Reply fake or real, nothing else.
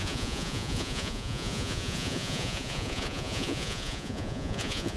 fake